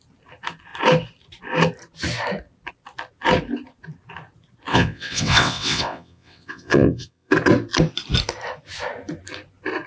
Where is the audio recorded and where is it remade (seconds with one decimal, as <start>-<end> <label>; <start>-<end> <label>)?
0.0-4.7 recorded; 4.7-7.3 remade; 7.3-9.9 recorded